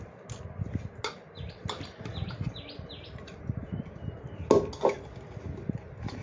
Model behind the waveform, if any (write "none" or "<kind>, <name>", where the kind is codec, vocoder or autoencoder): none